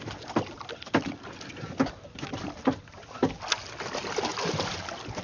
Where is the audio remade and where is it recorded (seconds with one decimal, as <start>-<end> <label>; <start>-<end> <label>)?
0.0-5.2 recorded